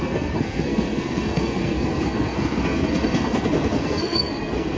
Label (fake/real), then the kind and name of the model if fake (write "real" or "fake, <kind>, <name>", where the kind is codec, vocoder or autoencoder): fake, codec, SNAC